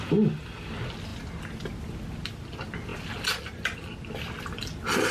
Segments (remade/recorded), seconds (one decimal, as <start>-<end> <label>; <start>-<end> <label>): 0.0-5.1 recorded